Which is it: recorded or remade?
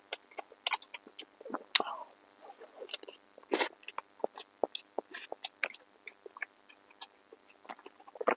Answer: recorded